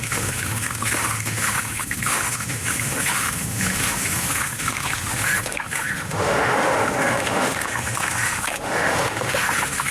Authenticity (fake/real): fake